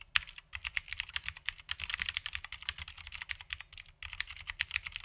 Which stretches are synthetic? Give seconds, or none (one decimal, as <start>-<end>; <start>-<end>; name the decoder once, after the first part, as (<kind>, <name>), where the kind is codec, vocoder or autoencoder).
none